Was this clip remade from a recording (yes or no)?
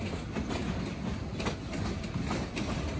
no